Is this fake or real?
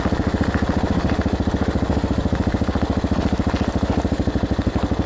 real